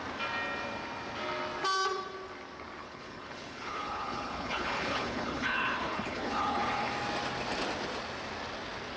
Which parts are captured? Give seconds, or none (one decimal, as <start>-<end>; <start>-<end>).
0.0-2.8; 6.9-9.0